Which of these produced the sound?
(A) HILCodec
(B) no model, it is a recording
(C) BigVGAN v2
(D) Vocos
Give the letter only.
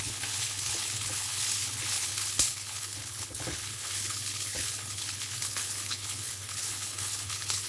A